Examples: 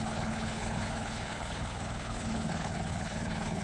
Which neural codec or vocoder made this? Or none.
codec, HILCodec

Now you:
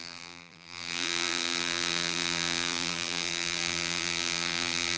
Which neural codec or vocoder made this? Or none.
vocoder, BigVGAN v2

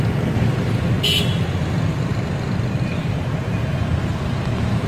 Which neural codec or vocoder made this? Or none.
none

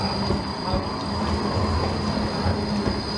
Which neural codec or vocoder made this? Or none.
none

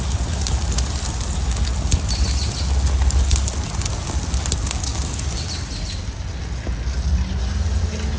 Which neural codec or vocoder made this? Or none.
none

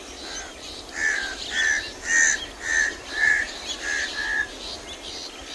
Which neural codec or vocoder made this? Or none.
none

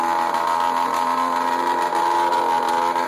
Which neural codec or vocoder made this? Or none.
none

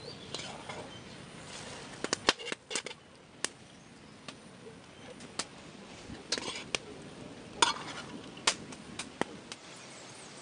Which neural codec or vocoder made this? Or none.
none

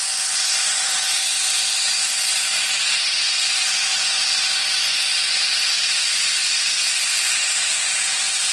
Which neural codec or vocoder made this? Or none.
vocoder, Vocos